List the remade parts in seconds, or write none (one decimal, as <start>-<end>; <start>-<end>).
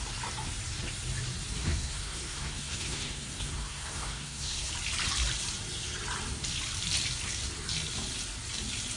1.6-4.7